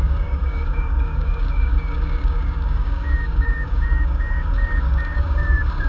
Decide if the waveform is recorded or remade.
remade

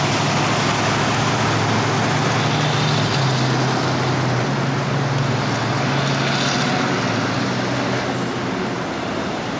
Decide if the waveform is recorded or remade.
recorded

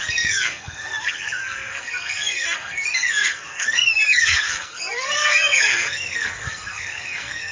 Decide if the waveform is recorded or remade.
remade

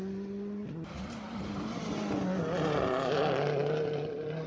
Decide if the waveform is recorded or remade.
recorded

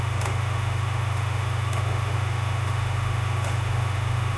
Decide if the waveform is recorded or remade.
remade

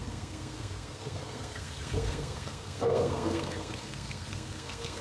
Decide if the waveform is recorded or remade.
remade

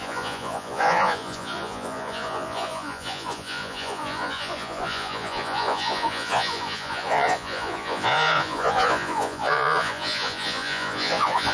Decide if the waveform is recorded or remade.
remade